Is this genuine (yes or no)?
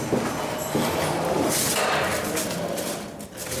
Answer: yes